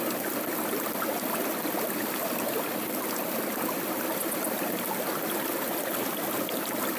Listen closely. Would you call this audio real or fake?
real